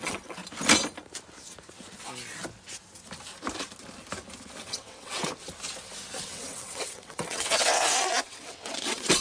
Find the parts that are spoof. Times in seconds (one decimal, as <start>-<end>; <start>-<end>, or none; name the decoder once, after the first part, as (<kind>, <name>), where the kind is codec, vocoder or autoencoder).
0.0-0.4 (vocoder, WaveNeXt); 4.6-5.3; 6.2-9.2